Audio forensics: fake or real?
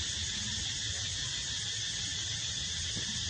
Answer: real